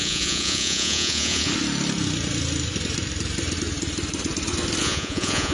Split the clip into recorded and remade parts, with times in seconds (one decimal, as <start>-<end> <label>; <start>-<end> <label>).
0.0-1.5 remade; 1.5-4.8 recorded; 4.8-5.5 remade